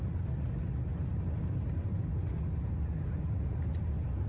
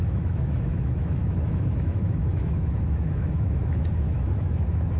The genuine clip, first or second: first